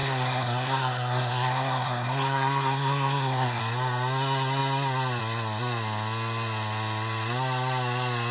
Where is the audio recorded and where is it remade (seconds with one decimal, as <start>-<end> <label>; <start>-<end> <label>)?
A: 0.0-3.6 remade; 3.6-8.3 recorded